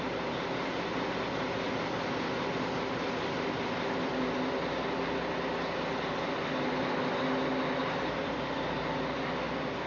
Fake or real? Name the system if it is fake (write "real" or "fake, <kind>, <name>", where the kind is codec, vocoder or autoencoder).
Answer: real